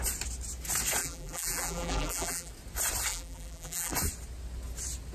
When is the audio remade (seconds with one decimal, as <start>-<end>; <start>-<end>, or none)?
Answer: 1.0-2.5; 3.1-3.9